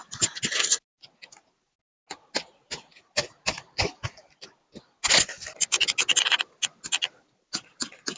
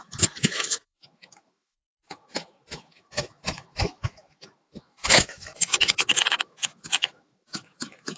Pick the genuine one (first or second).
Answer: first